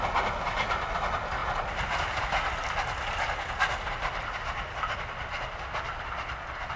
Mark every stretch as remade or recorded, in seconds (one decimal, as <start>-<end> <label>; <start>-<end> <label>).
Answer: 0.0-6.8 recorded